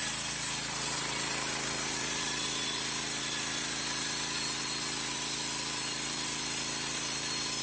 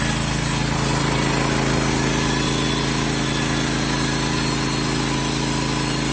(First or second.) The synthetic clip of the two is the first